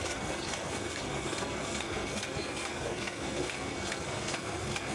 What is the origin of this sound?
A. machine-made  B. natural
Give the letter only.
A